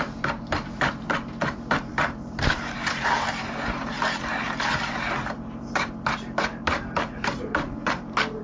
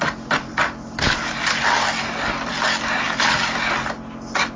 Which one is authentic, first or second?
second